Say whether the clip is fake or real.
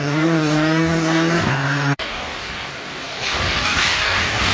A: fake